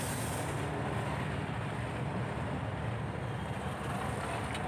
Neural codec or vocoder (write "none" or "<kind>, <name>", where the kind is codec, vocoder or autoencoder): none